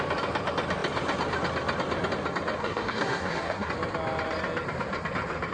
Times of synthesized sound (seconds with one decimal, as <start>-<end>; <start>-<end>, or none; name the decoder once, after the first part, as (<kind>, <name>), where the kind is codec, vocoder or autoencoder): 2.6-3.7 (codec, SNAC)